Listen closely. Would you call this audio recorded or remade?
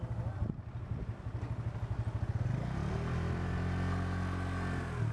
recorded